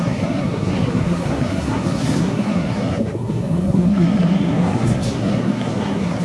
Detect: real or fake fake